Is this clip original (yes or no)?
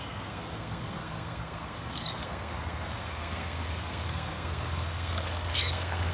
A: no